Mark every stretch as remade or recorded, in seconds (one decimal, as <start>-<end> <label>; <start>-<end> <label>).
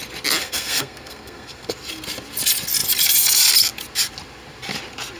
0.0-0.4 recorded; 0.4-1.7 remade; 1.7-5.2 recorded